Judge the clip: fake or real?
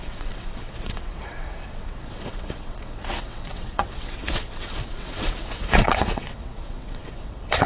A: fake